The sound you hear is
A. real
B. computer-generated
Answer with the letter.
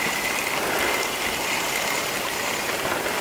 A